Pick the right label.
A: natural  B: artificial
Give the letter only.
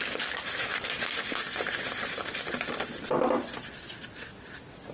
A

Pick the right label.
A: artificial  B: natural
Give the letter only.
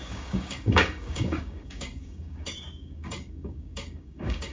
A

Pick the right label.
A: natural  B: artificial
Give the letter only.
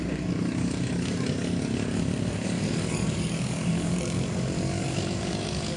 B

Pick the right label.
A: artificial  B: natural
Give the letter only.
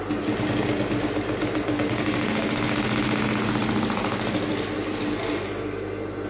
B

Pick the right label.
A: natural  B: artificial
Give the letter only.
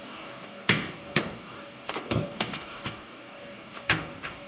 B